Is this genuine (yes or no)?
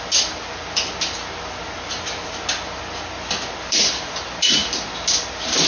yes